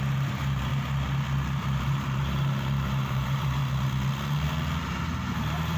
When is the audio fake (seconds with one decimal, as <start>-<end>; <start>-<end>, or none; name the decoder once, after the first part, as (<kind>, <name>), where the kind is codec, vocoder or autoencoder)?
0.0-0.7 (vocoder, BigVGAN v2); 1.6-3.6; 5.3-5.8